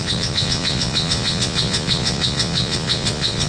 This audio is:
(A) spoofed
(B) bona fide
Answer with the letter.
A